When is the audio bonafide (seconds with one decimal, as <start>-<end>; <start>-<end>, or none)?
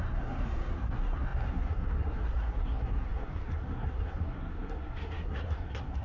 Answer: none